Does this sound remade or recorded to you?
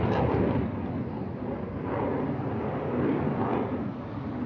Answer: recorded